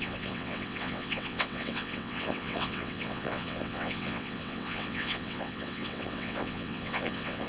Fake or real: fake